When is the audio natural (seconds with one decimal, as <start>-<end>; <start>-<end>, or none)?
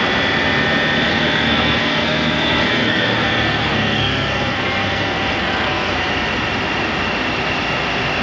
0.0-1.1; 6.0-8.2